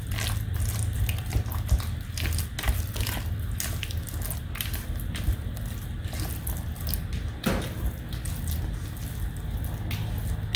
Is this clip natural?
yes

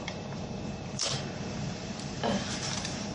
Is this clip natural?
no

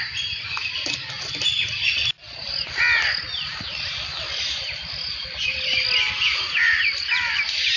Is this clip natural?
yes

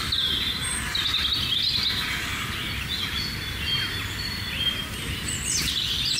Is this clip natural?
yes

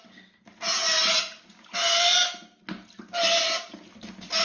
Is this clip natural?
yes